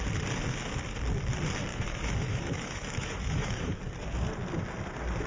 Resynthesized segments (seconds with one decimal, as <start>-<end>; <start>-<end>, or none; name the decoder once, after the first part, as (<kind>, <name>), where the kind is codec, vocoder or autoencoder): 1.7-3.8 (autoencoder, DAC-VAE)